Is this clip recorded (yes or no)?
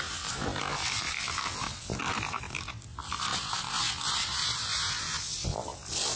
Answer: yes